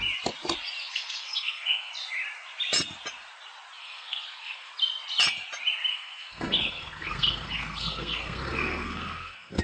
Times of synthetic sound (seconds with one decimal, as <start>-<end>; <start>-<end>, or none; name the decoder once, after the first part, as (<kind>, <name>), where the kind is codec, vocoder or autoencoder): 0.8-1.9 (codec, SNAC); 3.8-4.7; 5.9-9.6